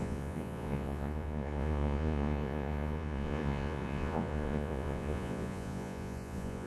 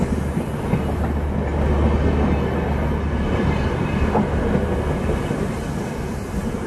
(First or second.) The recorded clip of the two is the second